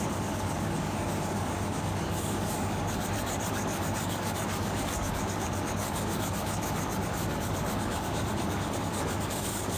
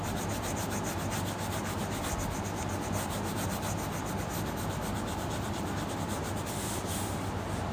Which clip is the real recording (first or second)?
second